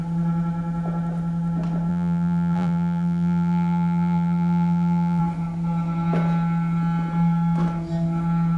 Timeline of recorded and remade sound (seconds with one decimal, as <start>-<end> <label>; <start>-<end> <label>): 0.0-1.9 recorded; 1.9-5.2 remade; 5.2-8.6 recorded